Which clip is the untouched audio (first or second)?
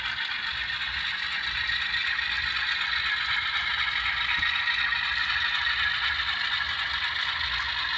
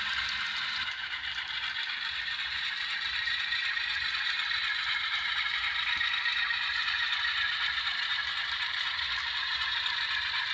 first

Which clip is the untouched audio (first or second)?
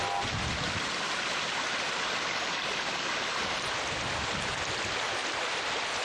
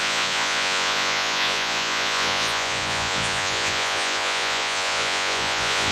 first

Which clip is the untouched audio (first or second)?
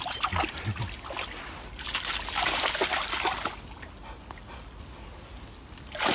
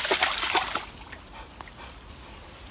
first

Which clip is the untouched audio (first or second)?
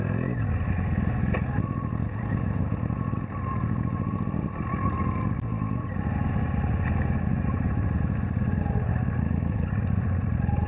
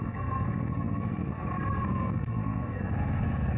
first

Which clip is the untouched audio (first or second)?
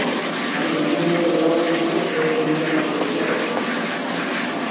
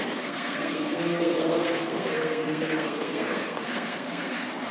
first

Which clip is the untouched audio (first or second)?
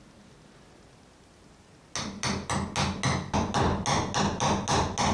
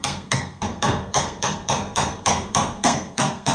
first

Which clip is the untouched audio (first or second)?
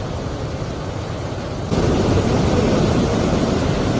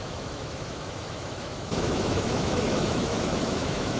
first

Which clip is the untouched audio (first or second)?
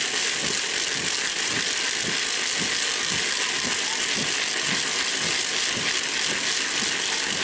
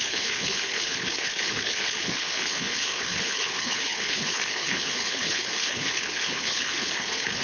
first